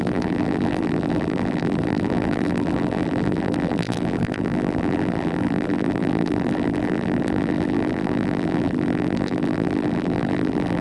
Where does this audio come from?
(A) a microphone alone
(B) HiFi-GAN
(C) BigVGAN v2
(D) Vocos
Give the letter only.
C